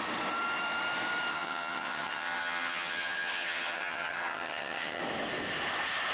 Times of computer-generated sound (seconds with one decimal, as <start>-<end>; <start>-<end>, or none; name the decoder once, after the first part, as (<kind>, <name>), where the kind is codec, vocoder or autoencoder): 1.3-5.0 (vocoder, HiFi-GAN)